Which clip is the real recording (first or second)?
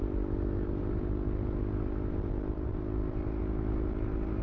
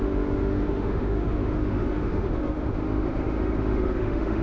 first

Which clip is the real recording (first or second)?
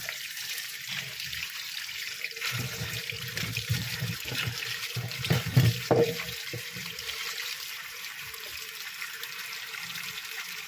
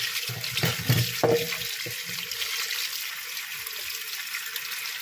second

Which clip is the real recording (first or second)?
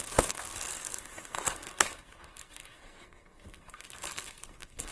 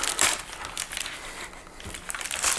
second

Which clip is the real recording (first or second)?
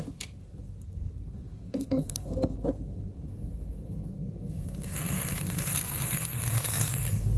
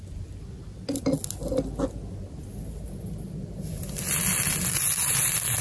second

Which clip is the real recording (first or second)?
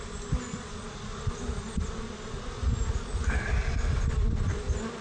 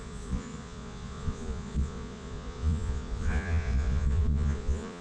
first